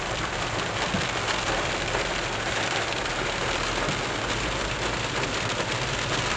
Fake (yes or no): no